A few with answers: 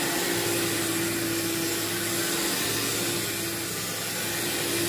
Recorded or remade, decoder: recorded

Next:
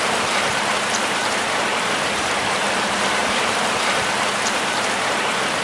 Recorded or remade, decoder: remade, vocoder, BigVGAN v2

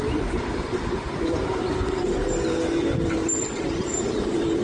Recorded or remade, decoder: remade, vocoder, BigVGAN v2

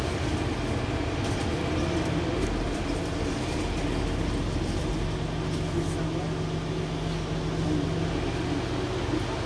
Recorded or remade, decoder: recorded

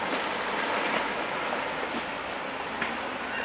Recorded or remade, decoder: recorded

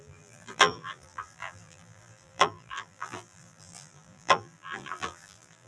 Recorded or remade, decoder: remade, vocoder, BigVGAN v2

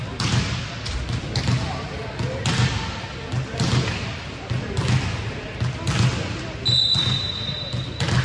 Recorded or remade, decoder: recorded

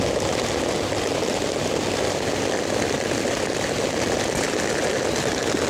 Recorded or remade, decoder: recorded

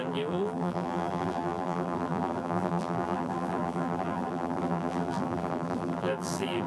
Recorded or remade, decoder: remade, vocoder, BigVGAN v2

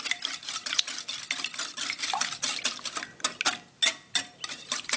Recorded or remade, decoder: recorded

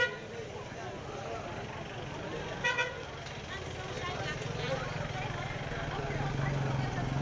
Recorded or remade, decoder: recorded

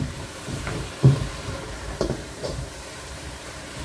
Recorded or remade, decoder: remade, vocoder, BigVGAN v2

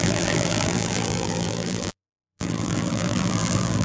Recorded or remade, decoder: remade, vocoder, BigVGAN v2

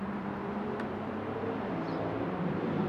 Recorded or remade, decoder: remade, vocoder, BigVGAN v2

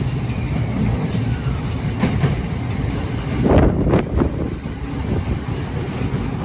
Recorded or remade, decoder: remade, vocoder, BigVGAN v2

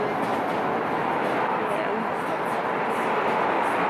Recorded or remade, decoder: recorded